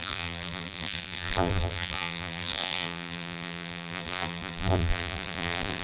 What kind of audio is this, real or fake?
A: fake